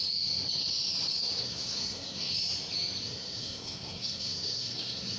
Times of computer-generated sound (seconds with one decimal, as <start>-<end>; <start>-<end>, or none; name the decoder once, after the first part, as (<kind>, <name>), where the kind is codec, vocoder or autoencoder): 1.2-2.3 (codec, SNAC); 3.0-5.2